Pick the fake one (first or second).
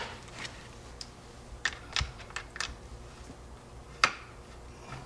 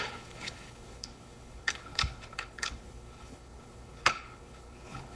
second